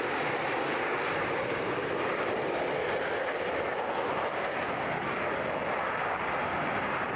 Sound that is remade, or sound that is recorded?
recorded